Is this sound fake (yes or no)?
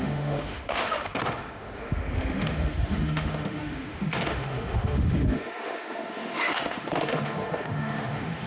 yes